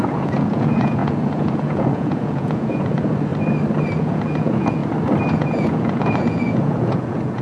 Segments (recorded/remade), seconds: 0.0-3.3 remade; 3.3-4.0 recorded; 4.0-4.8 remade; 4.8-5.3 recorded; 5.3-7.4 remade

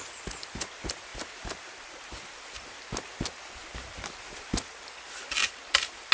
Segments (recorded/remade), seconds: 0.0-6.1 recorded

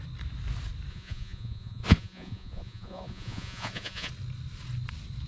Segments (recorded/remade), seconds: 0.0-0.9 recorded; 0.9-4.1 remade; 4.1-5.3 recorded

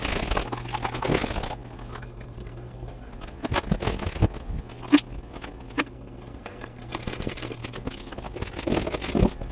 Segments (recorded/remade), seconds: 0.0-2.0 recorded; 2.0-3.1 remade; 3.1-5.8 recorded; 5.8-7.6 remade; 7.6-9.5 recorded

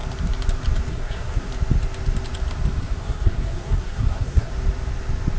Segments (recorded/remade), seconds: 0.0-0.9 recorded; 0.9-1.5 remade; 1.5-2.8 recorded; 2.8-4.5 remade; 4.5-5.4 recorded

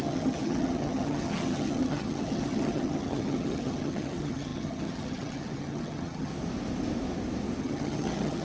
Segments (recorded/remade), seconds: 0.0-6.3 remade; 6.3-7.6 recorded; 7.6-8.4 remade